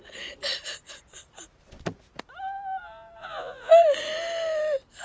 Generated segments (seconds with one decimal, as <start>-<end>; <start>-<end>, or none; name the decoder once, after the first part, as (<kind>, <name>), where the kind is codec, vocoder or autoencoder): 3.2-3.7 (vocoder, Vocos)